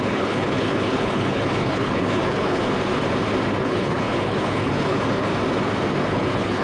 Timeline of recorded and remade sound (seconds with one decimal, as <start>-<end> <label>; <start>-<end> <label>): 0.0-2.6 remade; 2.6-3.6 recorded; 3.6-5.3 remade; 5.3-6.1 recorded; 6.1-6.6 remade